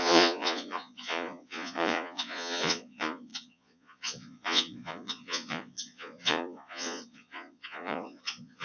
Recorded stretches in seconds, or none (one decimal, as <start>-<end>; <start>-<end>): none